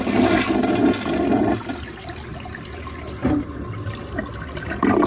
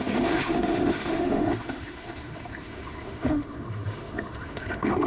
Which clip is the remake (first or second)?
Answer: second